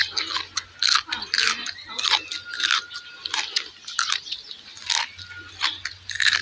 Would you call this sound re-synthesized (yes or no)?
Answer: no